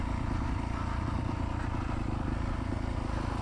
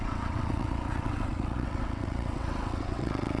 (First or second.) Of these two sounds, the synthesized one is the second